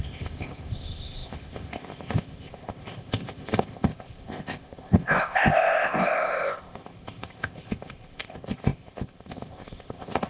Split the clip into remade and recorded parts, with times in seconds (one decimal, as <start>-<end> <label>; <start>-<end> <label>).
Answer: 0.0-10.3 remade